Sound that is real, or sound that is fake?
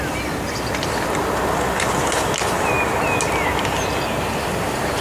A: real